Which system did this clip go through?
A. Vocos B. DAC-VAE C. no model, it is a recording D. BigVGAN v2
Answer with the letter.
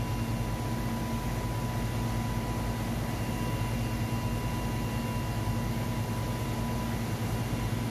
C